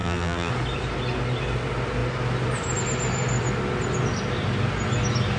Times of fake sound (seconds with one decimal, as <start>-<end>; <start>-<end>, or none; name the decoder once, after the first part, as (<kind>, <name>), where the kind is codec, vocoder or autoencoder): 0.0-0.5 (vocoder, BigVGAN v2)